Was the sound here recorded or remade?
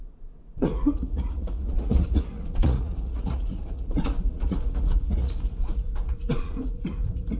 remade